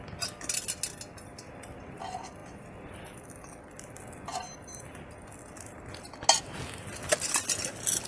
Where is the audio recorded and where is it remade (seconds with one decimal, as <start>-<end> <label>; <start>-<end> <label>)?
0.0-8.1 recorded